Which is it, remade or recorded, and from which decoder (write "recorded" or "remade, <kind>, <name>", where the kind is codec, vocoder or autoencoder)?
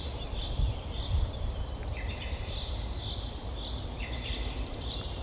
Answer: recorded